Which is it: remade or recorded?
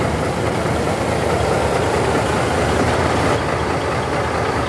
recorded